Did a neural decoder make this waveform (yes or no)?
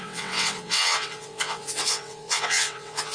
yes